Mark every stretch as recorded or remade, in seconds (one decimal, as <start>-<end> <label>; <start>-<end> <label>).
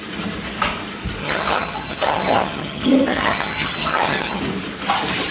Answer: 0.0-1.2 recorded; 1.2-4.4 remade; 4.4-5.3 recorded